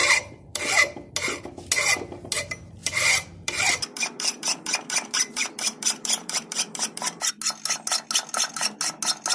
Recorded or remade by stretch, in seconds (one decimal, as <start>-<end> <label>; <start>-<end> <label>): 0.0-1.1 remade; 1.1-2.8 recorded; 2.8-7.3 remade; 7.3-9.3 recorded